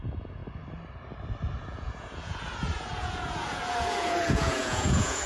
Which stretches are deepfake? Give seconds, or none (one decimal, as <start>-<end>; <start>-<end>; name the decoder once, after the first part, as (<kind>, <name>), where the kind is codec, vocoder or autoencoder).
0.0-0.4 (vocoder, Vocos); 1.6-5.3